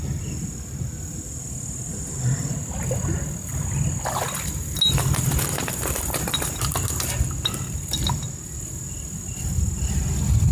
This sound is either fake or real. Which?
real